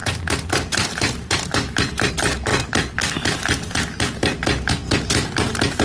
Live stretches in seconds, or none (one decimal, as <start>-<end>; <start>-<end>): 2.1-5.8